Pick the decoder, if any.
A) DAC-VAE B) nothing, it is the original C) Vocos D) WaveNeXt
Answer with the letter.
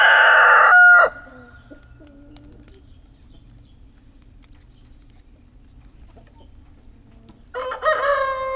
B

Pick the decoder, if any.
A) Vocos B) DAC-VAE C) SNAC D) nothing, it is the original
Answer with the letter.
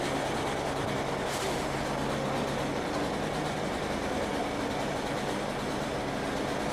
D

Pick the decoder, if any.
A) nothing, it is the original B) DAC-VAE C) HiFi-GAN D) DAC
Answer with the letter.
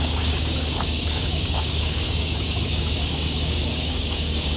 D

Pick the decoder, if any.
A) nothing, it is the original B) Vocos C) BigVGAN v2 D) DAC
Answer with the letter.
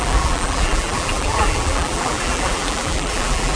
C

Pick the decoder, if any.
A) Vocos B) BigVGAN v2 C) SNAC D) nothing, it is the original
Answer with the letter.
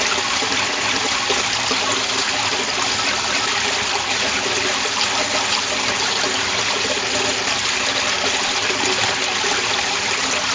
D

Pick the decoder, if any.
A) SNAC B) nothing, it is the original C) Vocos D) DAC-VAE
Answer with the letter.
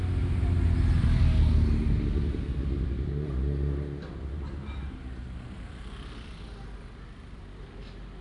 B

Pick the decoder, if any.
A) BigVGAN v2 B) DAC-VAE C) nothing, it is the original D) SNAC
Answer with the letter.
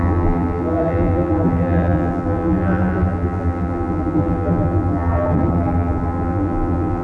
A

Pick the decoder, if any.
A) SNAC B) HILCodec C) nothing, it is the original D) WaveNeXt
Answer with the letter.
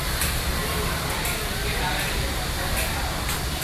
C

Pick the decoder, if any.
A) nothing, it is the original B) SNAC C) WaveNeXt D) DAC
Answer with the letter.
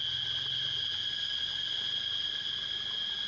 A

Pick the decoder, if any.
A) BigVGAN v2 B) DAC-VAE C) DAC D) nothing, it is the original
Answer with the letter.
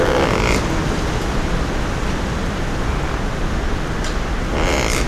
D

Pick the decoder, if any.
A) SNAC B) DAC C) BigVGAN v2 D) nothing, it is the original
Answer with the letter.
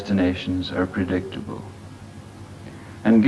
D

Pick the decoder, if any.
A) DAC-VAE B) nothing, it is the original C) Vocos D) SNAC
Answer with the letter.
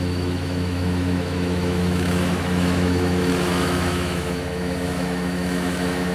A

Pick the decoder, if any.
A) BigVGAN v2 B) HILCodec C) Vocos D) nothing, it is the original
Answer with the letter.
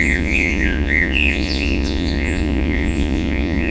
C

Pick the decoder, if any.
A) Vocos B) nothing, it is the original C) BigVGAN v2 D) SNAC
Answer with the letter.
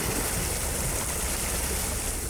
B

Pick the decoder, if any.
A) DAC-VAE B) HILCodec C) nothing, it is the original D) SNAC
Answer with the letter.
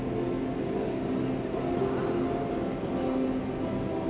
C